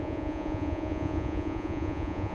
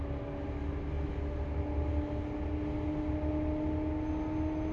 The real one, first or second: second